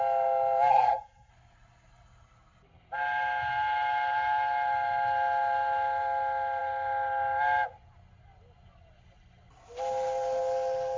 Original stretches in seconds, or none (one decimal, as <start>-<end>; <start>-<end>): 0.0-0.7; 1.3-11.0